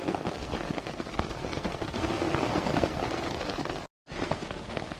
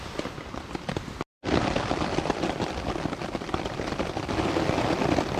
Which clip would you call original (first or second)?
second